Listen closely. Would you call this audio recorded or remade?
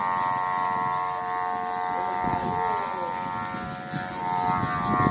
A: recorded